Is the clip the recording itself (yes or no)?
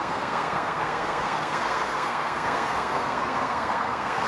no